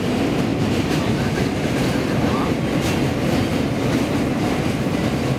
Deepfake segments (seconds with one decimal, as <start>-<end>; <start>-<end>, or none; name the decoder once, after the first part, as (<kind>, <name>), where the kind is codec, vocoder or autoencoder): 0.5-2.8 (vocoder, BigVGAN v2); 3.5-4.3